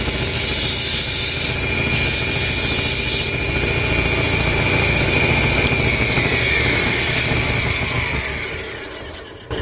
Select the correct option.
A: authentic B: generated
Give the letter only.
A